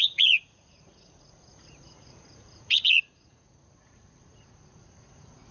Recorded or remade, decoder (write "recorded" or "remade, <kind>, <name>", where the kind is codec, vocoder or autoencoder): remade, vocoder, Vocos